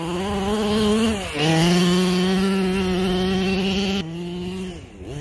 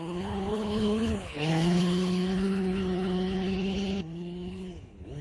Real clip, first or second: first